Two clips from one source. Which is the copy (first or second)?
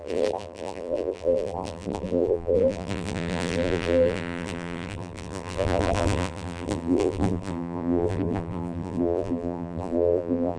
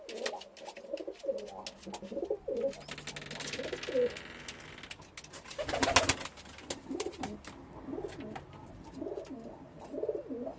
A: first